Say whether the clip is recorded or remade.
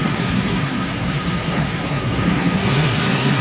remade